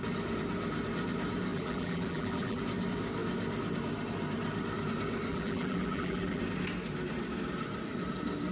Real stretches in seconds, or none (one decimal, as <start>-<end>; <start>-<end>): 0.0-1.5; 2.6-5.3; 6.4-8.5